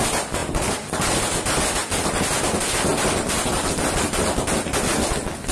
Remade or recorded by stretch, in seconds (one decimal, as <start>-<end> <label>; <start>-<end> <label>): 0.0-0.4 recorded; 0.4-1.1 remade; 1.1-2.9 recorded; 2.9-4.7 remade; 4.7-5.5 recorded